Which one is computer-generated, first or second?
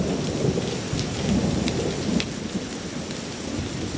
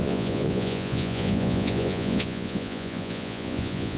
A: second